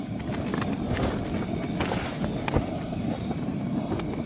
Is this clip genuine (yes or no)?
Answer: yes